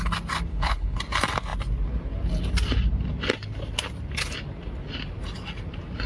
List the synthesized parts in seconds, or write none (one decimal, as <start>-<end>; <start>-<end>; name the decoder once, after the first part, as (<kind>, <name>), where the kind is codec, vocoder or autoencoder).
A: 0.5-1.0 (codec, HILCodec)